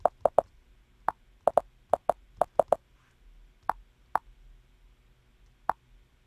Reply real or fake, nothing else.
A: real